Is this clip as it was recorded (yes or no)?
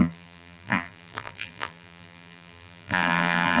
no